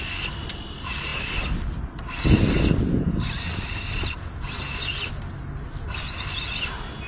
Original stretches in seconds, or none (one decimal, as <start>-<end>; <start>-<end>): 0.0-7.1